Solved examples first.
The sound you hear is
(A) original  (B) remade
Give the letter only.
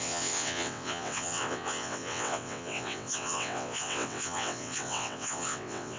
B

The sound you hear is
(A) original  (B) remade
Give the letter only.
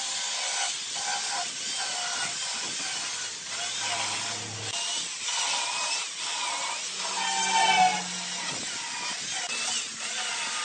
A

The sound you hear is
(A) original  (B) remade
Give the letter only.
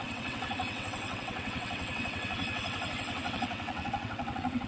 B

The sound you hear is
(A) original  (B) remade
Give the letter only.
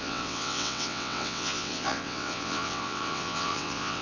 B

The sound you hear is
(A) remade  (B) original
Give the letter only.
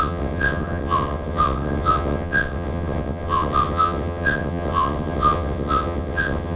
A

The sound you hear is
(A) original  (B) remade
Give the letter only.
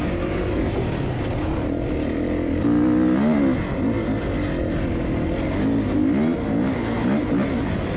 A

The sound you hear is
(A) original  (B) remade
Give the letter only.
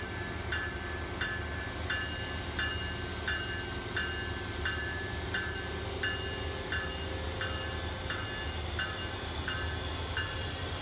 A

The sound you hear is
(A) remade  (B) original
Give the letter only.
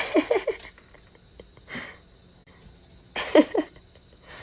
B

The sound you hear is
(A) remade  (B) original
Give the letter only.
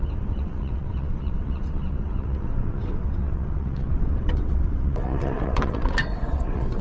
A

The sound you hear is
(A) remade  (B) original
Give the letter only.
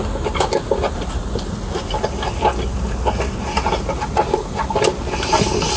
B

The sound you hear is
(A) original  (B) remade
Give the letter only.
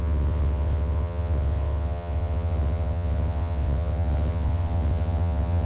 B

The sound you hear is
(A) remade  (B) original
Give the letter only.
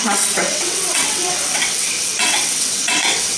A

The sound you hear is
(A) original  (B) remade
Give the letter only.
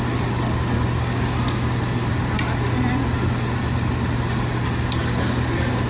A